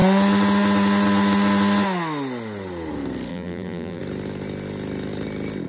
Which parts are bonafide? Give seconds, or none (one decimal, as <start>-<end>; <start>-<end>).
0.0-3.3; 4.0-5.7